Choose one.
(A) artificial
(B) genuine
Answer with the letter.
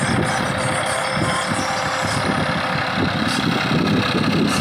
B